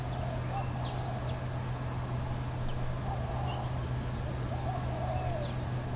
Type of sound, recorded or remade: recorded